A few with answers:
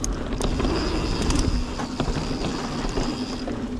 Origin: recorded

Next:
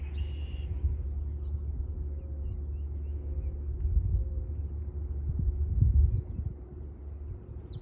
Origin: recorded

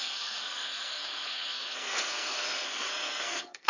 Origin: remade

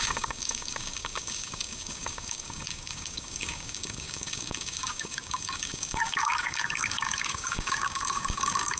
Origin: remade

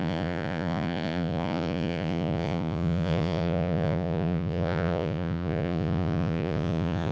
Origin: remade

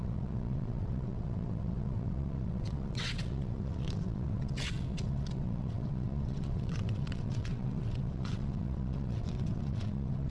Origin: remade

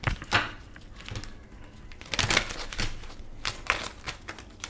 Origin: recorded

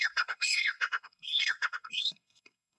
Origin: remade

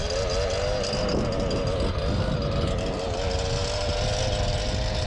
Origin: recorded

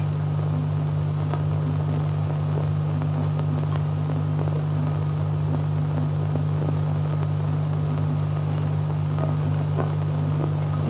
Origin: recorded